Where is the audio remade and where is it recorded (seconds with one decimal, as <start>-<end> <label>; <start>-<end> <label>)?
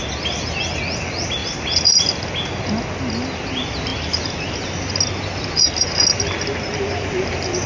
0.0-7.7 recorded